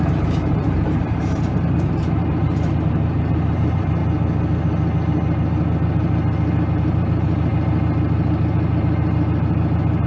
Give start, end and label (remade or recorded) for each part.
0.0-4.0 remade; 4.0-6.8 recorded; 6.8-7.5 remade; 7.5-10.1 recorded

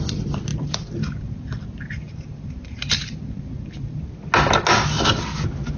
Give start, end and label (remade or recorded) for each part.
0.0-0.5 recorded; 0.5-4.0 remade; 4.0-5.8 recorded

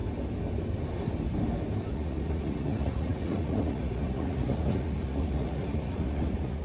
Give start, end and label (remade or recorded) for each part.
0.0-1.9 recorded; 1.9-6.6 remade

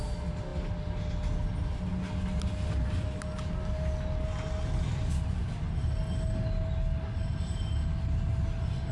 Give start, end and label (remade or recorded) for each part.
0.0-8.9 recorded

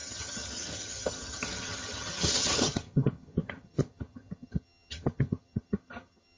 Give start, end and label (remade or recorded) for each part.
0.0-6.4 remade

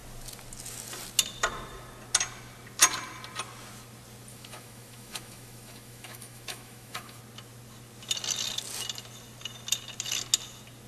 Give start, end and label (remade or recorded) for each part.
0.0-4.3 recorded; 4.3-7.2 remade; 7.2-10.9 recorded